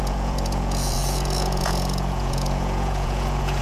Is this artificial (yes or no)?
yes